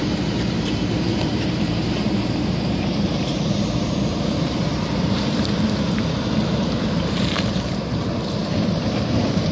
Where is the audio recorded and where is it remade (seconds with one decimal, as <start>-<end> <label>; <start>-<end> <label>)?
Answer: 0.0-9.5 remade